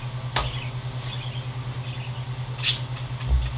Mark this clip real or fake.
real